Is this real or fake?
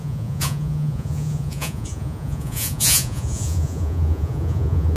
fake